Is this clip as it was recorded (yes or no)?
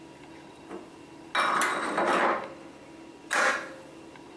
yes